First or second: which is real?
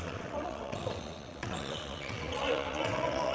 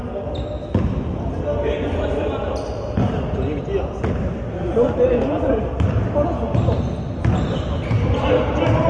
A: second